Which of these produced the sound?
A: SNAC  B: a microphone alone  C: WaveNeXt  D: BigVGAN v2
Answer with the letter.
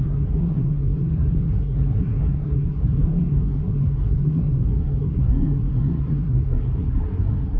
A